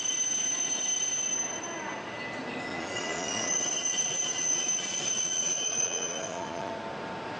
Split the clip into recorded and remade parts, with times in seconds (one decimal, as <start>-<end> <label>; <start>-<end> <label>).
0.0-2.7 recorded; 2.7-6.7 remade; 6.7-7.4 recorded